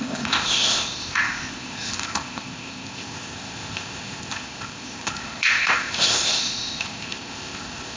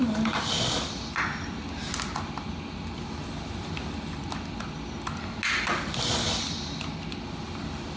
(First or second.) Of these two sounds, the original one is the second